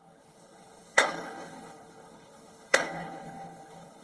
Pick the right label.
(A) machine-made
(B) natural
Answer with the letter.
A